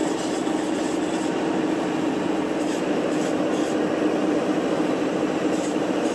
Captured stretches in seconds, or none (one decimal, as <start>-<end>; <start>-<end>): 3.4-4.2